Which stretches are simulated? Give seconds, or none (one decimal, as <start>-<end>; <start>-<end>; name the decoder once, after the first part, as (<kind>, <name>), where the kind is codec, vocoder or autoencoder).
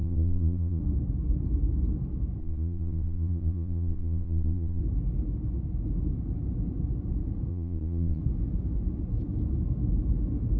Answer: 0.0-0.8 (vocoder, Vocos); 2.4-4.8; 7.5-8.2